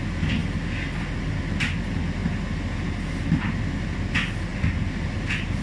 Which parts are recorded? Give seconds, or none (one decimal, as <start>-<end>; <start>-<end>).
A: 0.0-4.5